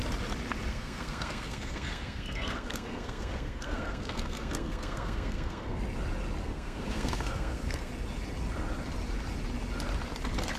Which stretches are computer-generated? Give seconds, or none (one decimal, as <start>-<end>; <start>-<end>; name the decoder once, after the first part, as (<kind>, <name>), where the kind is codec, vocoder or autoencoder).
0.7-5.8 (codec, SNAC); 6.4-7.9